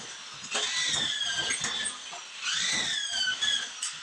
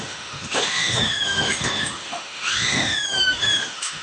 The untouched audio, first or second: first